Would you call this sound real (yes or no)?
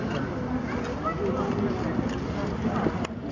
yes